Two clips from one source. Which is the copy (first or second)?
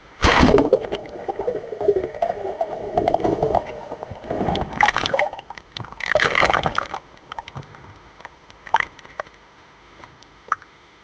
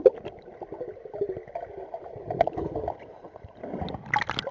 first